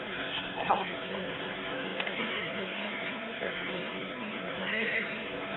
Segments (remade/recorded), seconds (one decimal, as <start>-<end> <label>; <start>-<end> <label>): 0.0-5.6 remade